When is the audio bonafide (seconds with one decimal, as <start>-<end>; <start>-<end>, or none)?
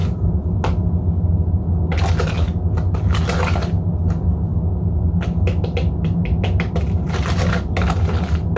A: 0.0-8.6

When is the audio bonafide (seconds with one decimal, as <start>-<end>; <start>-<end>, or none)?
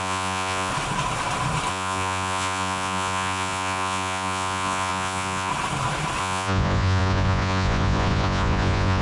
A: 0.7-1.7; 5.5-6.2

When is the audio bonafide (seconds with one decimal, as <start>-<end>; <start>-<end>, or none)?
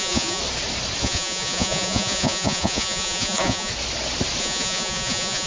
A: 0.4-1.0; 3.7-4.4